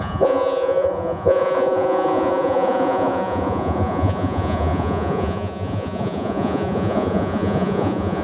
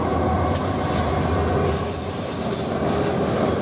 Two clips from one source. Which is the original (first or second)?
second